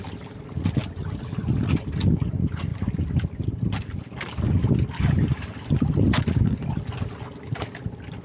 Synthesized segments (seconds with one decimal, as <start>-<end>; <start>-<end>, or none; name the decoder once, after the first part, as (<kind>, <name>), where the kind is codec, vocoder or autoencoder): none